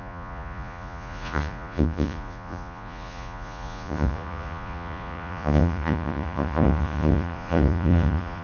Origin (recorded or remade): remade